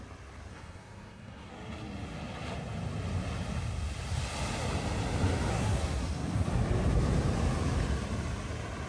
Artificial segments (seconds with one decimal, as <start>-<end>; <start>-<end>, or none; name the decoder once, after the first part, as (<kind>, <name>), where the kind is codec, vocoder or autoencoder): 0.5-1.5 (codec, SNAC); 5.5-6.5